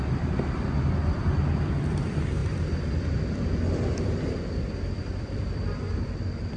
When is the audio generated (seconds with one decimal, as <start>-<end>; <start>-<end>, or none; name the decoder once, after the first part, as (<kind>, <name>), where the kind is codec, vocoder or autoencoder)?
0.0-6.6 (vocoder, BigVGAN v2)